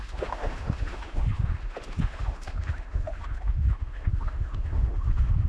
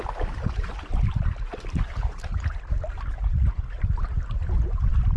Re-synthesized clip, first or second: first